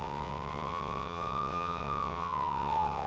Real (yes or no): no